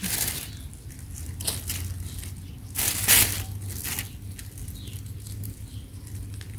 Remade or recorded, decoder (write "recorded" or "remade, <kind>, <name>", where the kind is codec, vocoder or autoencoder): recorded